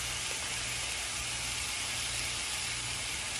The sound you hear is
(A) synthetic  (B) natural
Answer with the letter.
B